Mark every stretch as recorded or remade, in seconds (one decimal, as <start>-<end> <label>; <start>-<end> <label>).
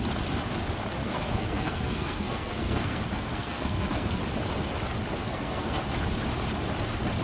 0.0-1.0 recorded; 1.0-4.2 remade; 4.2-5.2 recorded; 5.2-5.8 remade; 5.8-7.2 recorded